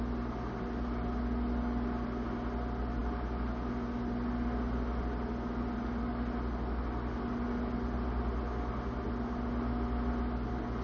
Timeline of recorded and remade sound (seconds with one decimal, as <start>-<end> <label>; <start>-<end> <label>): 0.0-10.8 recorded